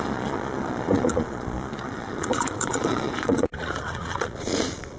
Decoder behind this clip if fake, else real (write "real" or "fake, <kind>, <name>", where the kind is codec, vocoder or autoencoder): fake, vocoder, Vocos